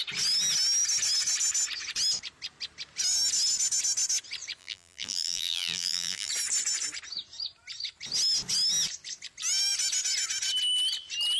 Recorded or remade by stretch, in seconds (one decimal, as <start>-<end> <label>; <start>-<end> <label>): 0.0-4.6 recorded; 4.6-6.3 remade; 6.3-11.4 recorded